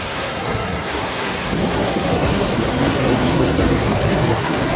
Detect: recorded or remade remade